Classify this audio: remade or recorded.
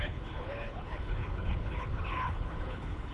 remade